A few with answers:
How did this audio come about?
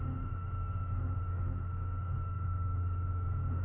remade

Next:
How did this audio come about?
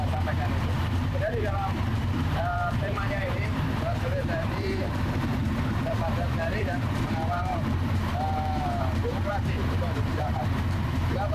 remade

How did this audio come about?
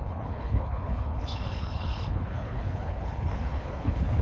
remade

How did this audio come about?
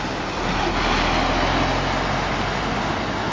recorded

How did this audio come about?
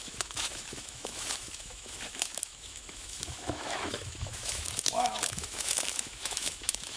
remade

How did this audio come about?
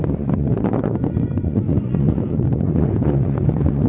remade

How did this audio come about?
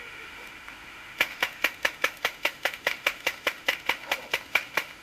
remade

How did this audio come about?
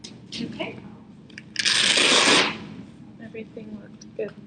recorded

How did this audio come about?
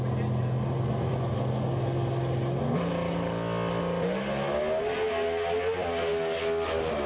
recorded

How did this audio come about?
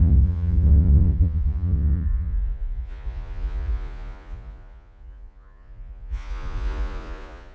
remade